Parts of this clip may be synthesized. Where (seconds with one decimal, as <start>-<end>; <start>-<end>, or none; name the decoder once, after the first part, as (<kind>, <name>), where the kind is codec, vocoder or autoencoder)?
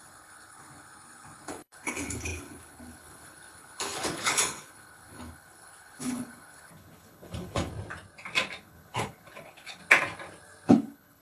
0.0-7.7 (codec, HILCodec); 8.6-9.8; 10.7-11.2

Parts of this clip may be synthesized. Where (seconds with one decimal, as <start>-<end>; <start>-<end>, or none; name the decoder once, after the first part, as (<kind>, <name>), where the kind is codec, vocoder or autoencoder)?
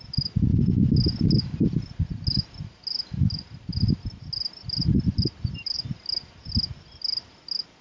none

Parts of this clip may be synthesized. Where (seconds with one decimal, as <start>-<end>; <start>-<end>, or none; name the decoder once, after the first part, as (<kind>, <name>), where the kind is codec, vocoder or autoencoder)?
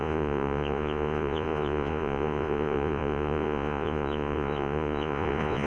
0.0-5.7 (vocoder, Vocos)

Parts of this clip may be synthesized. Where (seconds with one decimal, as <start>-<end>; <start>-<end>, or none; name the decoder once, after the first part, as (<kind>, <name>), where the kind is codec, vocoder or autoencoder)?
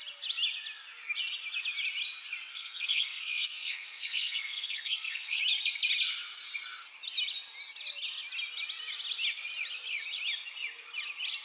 2.5-5.4 (codec, SNAC)